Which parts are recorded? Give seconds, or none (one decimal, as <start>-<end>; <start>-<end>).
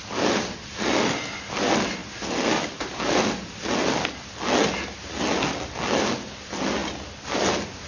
0.0-7.9